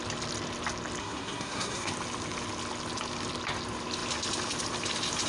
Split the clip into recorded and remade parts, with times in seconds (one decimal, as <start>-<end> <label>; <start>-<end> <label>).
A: 0.0-1.0 recorded; 1.0-1.9 remade; 1.9-5.3 recorded